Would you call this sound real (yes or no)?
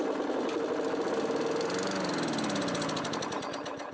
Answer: yes